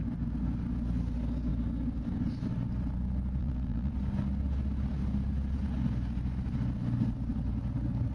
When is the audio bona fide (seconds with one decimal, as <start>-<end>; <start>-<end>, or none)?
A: 0.0-3.4; 3.9-8.1